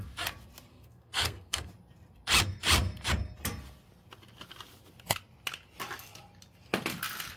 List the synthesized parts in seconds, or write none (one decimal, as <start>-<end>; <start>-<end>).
0.7-1.7